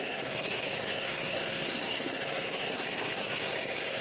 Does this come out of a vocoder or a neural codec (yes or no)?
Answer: yes